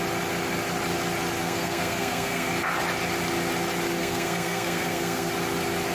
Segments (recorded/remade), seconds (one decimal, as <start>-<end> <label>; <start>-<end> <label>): 0.0-1.4 recorded; 1.4-2.5 remade; 2.5-4.0 recorded; 4.0-5.3 remade; 5.3-5.9 recorded